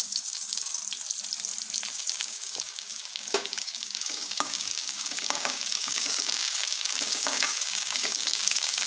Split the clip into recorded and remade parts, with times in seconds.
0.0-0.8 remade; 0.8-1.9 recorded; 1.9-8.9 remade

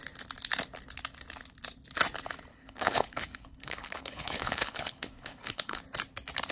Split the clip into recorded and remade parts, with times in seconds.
0.0-2.5 recorded; 2.5-5.8 remade; 5.8-6.5 recorded

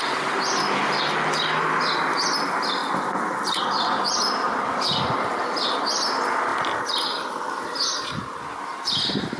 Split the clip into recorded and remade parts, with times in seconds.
0.0-9.4 recorded